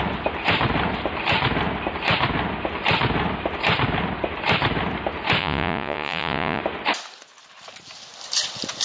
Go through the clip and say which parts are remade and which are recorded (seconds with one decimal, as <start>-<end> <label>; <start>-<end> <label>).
0.0-5.4 recorded; 5.4-6.6 remade; 6.6-8.8 recorded